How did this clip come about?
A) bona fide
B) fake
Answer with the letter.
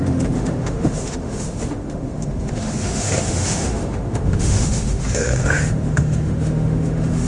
B